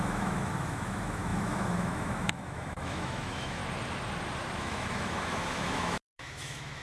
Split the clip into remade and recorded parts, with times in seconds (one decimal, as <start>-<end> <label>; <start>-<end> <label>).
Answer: 0.0-3.6 remade; 3.6-4.6 recorded; 4.6-6.8 remade